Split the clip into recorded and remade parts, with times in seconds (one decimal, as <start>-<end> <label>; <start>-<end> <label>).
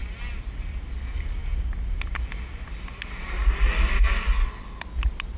0.0-5.4 recorded